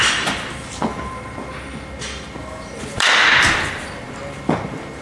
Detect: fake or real real